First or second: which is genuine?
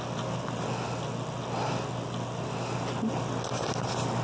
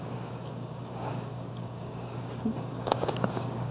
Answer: first